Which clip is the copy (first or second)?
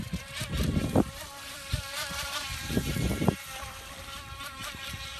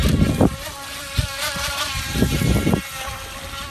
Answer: first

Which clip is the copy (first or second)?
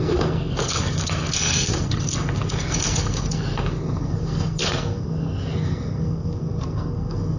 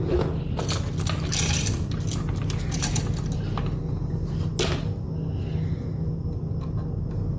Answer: first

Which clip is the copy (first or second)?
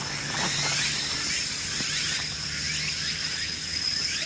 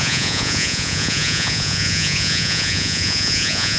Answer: second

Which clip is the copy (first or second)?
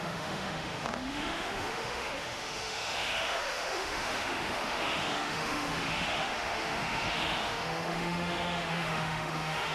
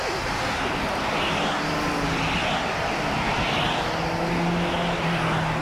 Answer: first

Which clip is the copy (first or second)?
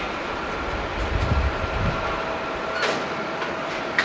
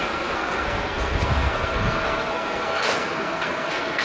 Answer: second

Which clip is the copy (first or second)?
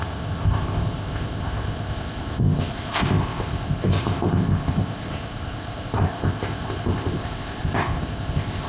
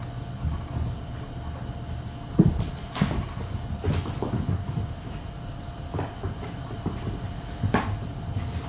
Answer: first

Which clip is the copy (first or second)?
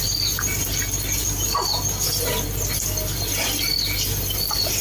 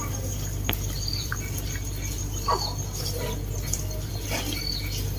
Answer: second